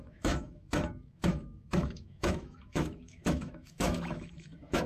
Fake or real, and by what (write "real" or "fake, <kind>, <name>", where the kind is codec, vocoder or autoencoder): fake, autoencoder, DAC-VAE